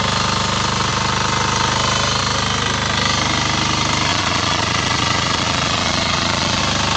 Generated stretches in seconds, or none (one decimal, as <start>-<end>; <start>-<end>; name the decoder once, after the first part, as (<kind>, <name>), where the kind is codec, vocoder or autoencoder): 4.1-6.6 (vocoder, Vocos)